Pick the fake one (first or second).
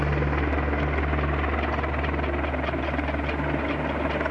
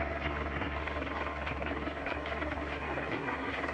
second